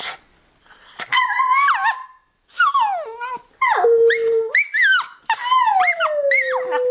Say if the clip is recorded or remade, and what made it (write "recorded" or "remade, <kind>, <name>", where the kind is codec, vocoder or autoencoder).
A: recorded